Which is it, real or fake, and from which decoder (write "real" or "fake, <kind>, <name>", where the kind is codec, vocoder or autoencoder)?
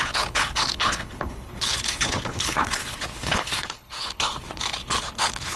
fake, codec, HILCodec